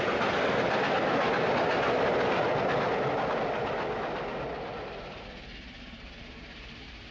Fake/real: real